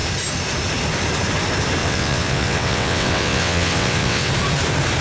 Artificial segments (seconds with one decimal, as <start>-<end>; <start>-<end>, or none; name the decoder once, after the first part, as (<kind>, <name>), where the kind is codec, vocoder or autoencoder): 1.8-4.3 (vocoder, WaveNeXt)